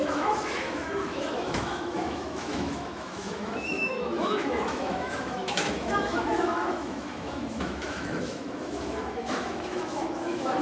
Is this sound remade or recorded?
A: remade